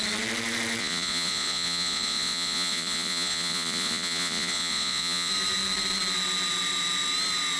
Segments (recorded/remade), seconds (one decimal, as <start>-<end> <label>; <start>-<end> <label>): 0.0-0.8 recorded; 0.8-5.3 remade; 5.3-7.6 recorded